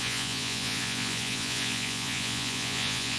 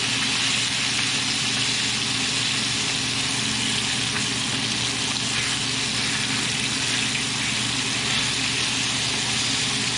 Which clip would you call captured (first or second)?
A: second